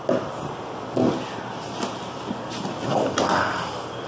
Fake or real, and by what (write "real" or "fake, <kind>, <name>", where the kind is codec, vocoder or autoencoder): real